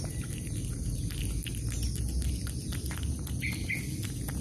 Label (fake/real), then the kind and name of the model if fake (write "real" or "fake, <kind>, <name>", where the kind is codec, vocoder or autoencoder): real